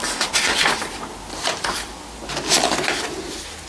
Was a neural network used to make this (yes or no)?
no